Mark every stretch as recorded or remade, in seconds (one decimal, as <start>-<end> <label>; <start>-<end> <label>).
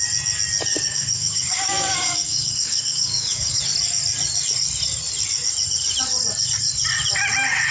0.0-0.7 recorded; 0.7-3.6 remade; 3.6-7.7 recorded